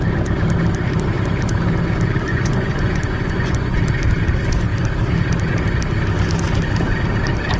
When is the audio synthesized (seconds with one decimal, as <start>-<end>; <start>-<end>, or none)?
2.3-3.8